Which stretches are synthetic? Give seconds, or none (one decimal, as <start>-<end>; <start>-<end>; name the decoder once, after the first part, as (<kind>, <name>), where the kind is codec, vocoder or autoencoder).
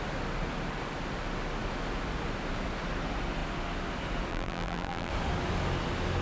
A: 4.3-5.1 (vocoder, BigVGAN v2)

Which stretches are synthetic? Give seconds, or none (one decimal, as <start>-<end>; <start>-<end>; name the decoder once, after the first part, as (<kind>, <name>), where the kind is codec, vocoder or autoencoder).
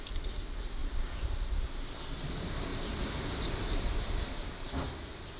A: 2.7-4.6 (vocoder, BigVGAN v2)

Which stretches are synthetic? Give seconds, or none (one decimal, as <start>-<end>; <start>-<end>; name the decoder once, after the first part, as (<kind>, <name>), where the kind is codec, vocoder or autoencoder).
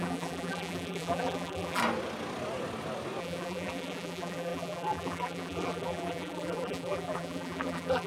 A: 0.0-1.8 (vocoder, BigVGAN v2); 3.2-8.1